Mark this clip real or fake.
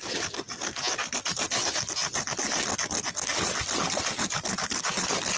real